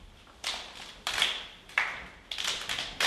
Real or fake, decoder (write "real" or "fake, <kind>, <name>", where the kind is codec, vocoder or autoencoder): real